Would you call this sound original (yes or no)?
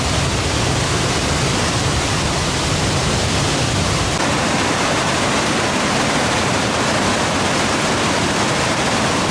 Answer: no